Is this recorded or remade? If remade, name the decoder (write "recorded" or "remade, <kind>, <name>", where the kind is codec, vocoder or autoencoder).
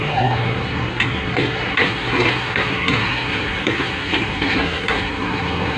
remade, codec, SNAC